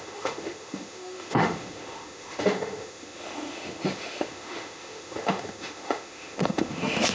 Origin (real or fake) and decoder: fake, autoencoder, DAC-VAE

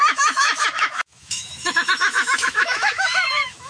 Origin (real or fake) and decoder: fake, autoencoder, DAC-VAE